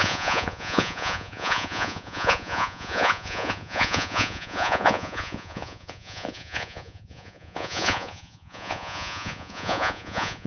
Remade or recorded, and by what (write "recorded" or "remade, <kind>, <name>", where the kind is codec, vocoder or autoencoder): remade, vocoder, Vocos